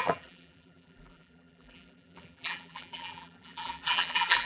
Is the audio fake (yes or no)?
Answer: yes